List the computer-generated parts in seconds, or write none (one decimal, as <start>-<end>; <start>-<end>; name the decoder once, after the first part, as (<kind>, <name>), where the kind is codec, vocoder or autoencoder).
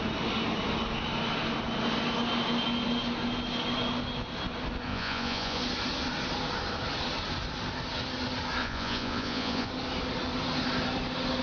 4.9-5.6 (vocoder, Vocos); 8.6-9.7